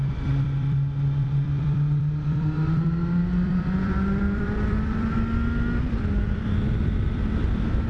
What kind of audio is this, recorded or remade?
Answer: remade